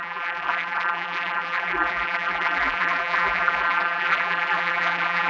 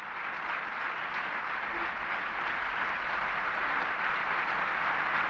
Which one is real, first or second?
second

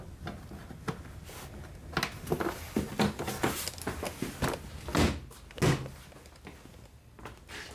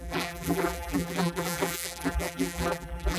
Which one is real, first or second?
first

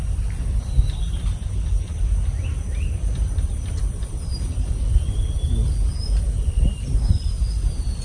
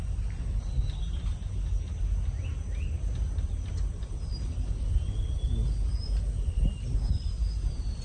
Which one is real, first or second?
second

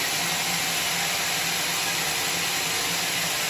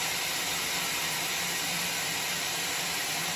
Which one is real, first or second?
first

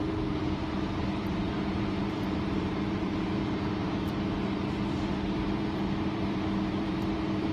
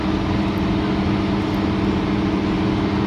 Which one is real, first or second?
second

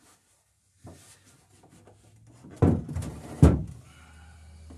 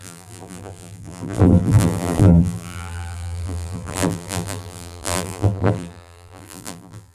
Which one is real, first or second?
first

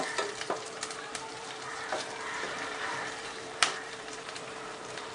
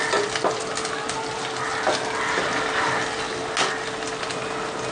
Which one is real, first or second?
second